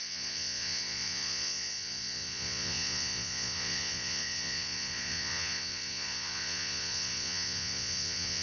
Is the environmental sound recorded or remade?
remade